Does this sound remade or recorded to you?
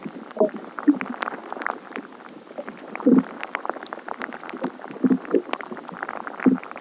recorded